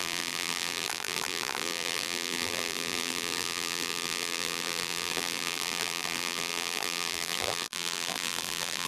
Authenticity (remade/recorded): remade